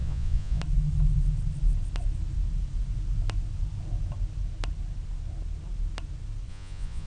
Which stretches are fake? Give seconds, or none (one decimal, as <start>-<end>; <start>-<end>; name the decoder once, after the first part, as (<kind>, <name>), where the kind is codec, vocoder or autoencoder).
0.0-0.6 (vocoder, Vocos); 6.5-7.1